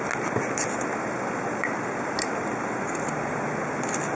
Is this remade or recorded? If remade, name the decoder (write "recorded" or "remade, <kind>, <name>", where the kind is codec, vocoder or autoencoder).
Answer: recorded